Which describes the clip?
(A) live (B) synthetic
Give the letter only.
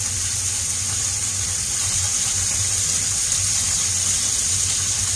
A